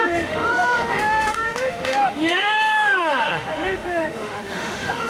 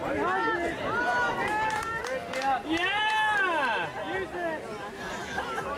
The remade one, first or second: first